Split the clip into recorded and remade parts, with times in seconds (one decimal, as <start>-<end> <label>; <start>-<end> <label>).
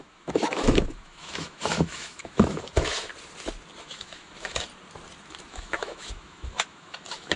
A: 0.0-3.1 remade; 3.1-3.8 recorded; 3.8-4.7 remade; 4.7-5.5 recorded; 5.5-7.4 remade